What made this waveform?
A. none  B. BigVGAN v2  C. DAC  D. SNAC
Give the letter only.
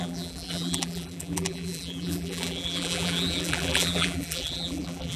B